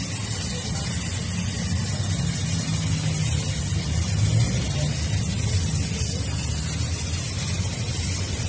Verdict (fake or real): real